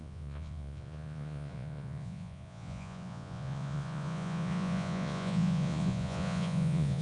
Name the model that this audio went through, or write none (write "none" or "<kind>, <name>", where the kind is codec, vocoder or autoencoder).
vocoder, Vocos